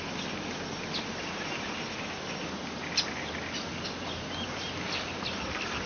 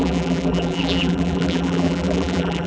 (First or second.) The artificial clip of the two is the second